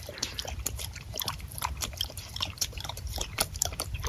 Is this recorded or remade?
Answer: remade